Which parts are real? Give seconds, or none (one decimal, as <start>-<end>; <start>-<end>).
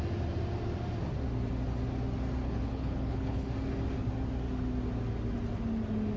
0.0-2.4; 3.5-6.2